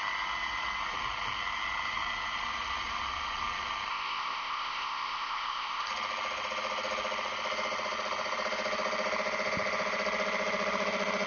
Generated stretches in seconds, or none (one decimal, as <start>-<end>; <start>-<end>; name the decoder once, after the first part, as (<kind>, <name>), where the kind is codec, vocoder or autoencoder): 3.9-5.9 (codec, ZipCodec)